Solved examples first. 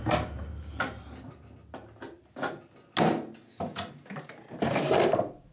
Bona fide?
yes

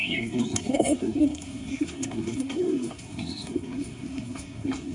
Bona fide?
no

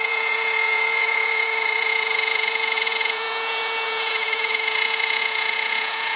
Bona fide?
no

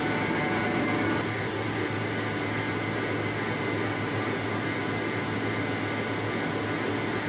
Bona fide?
yes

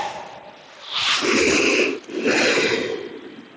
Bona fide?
yes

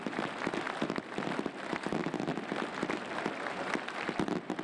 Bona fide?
no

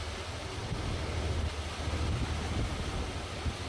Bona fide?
yes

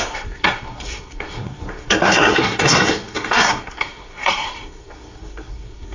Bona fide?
no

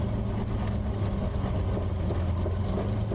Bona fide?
yes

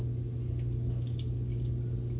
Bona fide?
yes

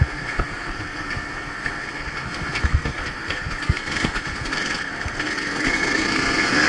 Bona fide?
no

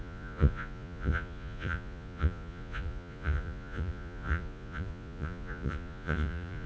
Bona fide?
no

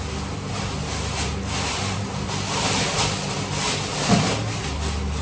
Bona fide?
yes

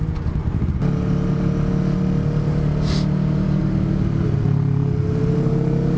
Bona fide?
yes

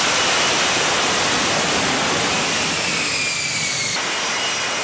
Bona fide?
yes